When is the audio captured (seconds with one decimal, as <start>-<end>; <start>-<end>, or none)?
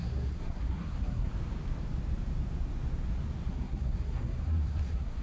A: 1.3-3.5